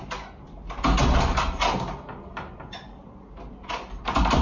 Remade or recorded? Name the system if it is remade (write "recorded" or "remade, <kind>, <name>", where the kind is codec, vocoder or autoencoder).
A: recorded